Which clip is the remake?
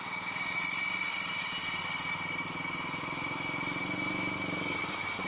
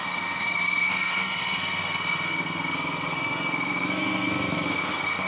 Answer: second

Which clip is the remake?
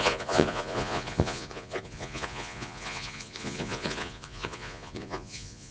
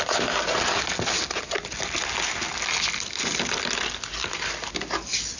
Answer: first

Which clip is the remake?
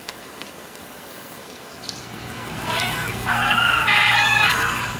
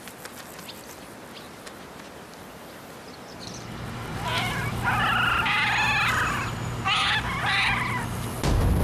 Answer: first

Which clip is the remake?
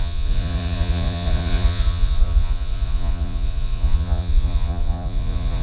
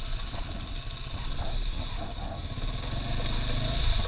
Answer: first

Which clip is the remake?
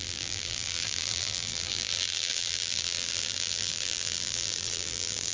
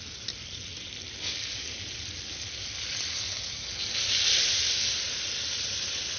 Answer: first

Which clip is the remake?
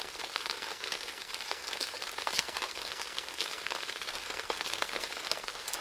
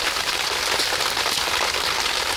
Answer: first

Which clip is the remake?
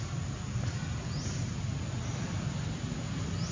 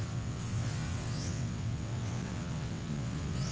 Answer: second